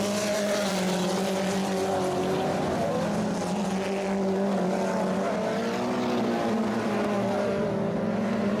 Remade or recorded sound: recorded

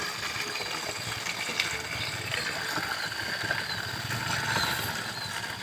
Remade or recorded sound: recorded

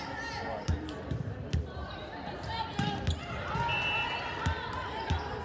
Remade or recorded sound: recorded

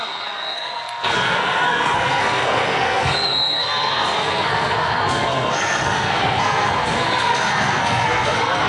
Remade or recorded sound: remade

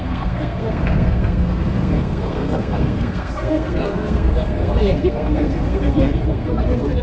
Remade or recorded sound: remade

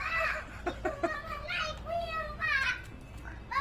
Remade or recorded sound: recorded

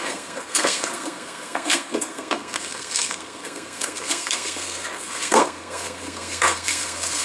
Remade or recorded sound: remade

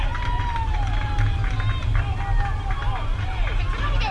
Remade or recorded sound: recorded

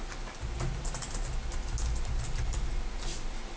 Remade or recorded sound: recorded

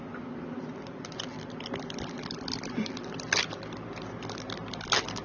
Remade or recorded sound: recorded